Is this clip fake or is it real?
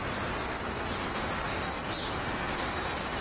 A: fake